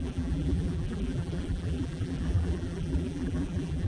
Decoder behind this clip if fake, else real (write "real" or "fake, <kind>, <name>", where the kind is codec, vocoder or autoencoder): fake, vocoder, BigVGAN v2